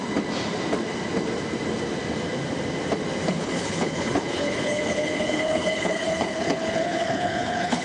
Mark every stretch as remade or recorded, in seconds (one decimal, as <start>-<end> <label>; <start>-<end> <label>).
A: 0.0-3.3 recorded; 3.3-7.8 remade